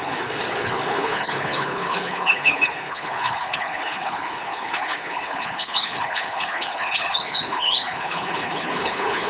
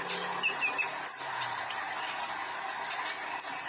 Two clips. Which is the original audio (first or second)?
second